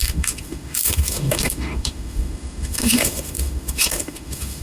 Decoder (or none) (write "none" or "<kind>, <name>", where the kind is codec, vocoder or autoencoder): autoencoder, DAC-VAE